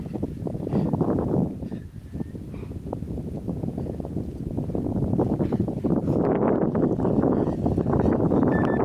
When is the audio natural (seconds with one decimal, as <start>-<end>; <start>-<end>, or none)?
0.0-1.4; 2.0-8.8